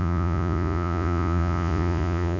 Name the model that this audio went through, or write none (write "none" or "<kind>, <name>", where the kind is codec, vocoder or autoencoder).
vocoder, Vocos